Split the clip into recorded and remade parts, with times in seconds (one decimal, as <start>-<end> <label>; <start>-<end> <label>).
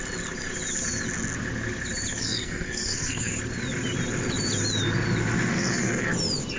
0.0-2.1 recorded; 2.1-3.3 remade; 3.3-5.5 recorded; 5.5-6.1 remade; 6.1-6.6 recorded